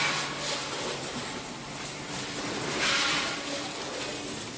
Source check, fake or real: real